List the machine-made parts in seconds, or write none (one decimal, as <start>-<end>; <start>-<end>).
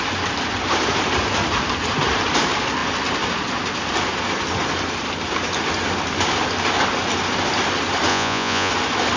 8.1-8.7